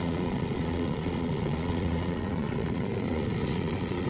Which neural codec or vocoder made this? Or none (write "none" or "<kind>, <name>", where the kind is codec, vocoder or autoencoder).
vocoder, Vocos